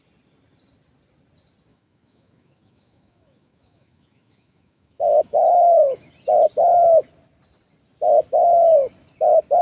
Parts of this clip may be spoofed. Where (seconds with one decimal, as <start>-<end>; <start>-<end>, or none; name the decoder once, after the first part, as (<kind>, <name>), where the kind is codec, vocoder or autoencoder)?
1.7-6.1 (autoencoder, DAC-VAE)